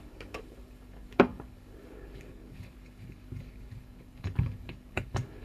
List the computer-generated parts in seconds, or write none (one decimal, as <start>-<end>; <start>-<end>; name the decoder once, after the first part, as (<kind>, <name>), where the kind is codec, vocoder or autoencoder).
0.0-5.4 (codec, DAC)